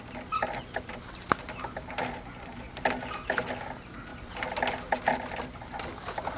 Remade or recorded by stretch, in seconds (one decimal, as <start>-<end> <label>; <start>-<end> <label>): 0.0-6.4 recorded